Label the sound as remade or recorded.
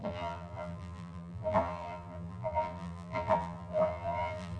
remade